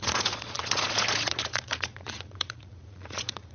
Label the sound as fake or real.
fake